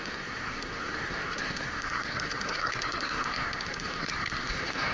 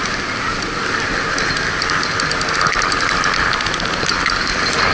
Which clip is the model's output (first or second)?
first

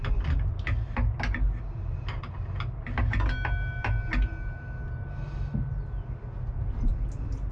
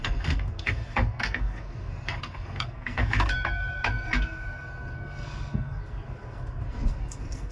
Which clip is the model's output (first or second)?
second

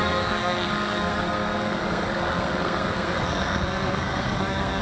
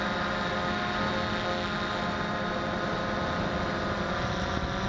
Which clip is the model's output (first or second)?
first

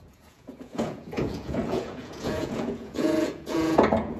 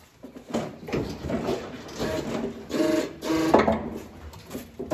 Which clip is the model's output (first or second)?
first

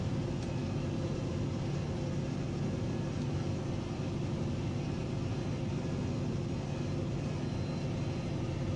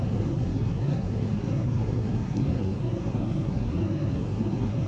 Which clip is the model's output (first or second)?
second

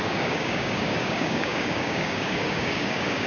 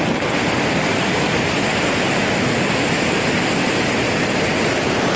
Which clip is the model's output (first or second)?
first